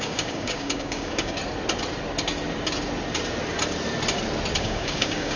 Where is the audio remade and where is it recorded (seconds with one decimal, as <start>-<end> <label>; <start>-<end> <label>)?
0.0-1.4 remade; 1.4-4.6 recorded; 4.6-5.4 remade

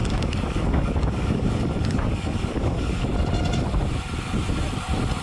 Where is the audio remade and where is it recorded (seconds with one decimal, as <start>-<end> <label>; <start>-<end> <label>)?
0.0-3.1 remade; 3.1-5.2 recorded

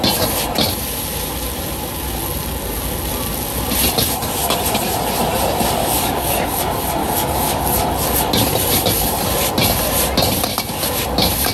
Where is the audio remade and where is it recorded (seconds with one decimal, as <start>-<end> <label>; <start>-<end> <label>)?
0.0-5.8 recorded; 5.8-6.6 remade; 6.6-7.0 recorded; 7.0-7.6 remade; 7.6-11.5 recorded

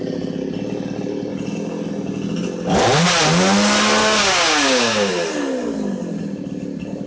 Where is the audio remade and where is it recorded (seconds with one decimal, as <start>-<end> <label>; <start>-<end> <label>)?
0.0-4.0 recorded; 4.0-5.1 remade; 5.1-7.1 recorded

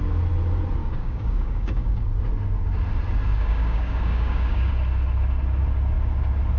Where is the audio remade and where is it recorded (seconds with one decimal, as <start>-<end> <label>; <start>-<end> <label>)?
0.0-0.8 recorded; 0.8-2.2 remade; 2.2-3.3 recorded; 3.3-4.7 remade; 4.7-6.6 recorded

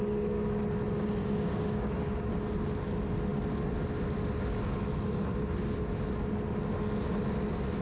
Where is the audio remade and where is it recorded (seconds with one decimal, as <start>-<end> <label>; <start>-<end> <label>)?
0.0-1.2 recorded; 1.2-2.3 remade; 2.3-7.8 recorded

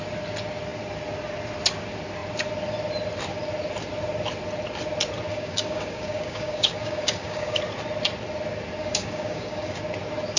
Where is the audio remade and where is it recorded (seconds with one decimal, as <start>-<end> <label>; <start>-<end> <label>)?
0.0-5.3 recorded; 5.3-7.6 remade; 7.6-8.8 recorded; 8.8-9.8 remade; 9.8-10.4 recorded